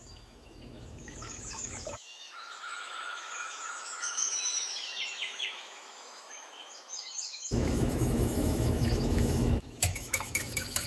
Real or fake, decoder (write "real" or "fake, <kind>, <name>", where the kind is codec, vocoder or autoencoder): fake, autoencoder, DAC-VAE